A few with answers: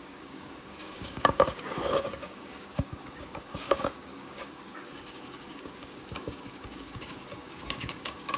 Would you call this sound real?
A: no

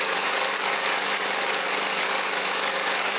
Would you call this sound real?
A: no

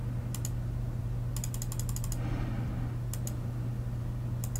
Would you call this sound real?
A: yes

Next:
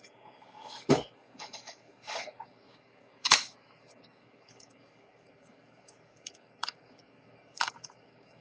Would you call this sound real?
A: no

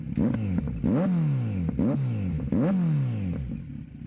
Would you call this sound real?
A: yes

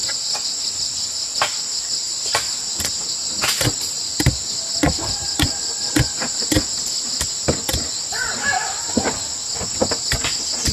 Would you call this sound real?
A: yes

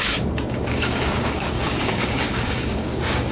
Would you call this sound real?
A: no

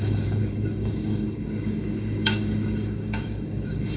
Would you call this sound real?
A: no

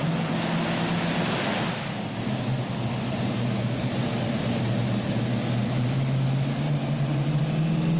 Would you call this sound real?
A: yes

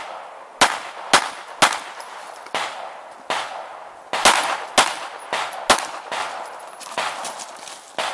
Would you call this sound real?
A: yes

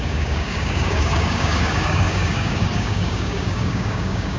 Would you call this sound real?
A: no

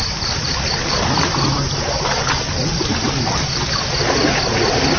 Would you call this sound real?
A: yes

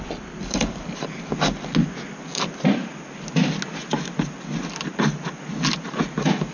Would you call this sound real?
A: yes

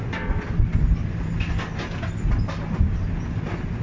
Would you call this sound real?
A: yes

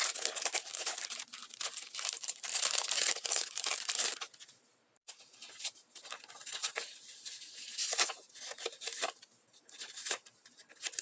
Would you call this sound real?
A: yes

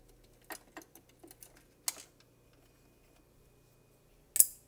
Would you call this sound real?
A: yes